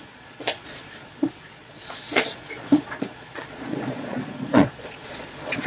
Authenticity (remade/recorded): remade